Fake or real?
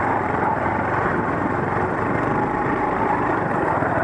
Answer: fake